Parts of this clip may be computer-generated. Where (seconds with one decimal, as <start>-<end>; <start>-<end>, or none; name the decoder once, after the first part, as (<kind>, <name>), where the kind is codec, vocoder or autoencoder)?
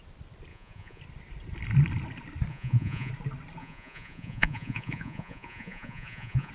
0.5-1.0 (vocoder, Vocos); 2.5-3.1; 3.6-6.5